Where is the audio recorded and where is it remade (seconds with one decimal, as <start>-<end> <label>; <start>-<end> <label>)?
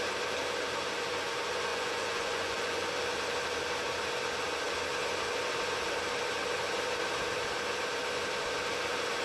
0.0-1.7 recorded; 1.7-2.9 remade; 2.9-9.2 recorded